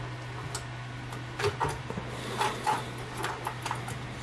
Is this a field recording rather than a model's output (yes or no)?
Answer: yes